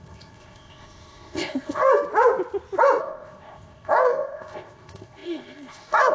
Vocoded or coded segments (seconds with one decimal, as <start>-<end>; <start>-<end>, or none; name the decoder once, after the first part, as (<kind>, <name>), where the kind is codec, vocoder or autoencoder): 0.0-1.9 (codec, ZipCodec); 3.0-6.1